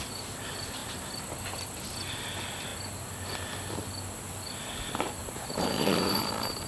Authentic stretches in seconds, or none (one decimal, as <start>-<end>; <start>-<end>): 0.0-5.2; 6.2-6.7